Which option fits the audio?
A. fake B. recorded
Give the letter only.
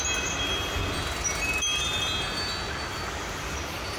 B